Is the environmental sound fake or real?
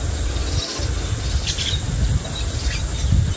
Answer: real